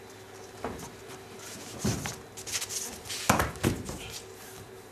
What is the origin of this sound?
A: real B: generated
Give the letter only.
A